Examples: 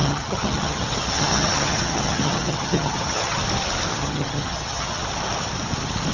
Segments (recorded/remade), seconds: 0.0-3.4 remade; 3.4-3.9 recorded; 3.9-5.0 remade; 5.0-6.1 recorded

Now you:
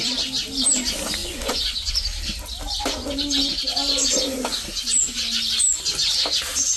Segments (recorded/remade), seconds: 0.0-1.2 recorded; 1.2-1.9 remade; 1.9-6.8 recorded

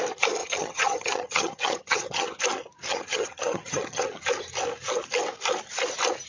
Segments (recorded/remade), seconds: 0.0-0.4 recorded; 0.4-2.4 remade; 2.4-2.9 recorded; 2.9-4.2 remade; 4.2-6.3 recorded